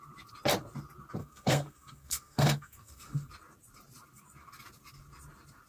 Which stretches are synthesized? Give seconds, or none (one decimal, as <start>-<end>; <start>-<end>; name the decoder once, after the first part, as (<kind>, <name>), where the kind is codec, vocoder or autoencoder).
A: 1.2-3.3 (codec, SNAC)